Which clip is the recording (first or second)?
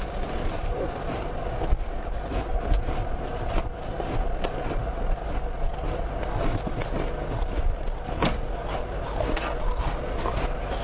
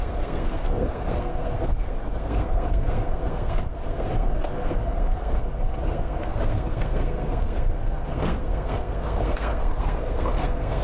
first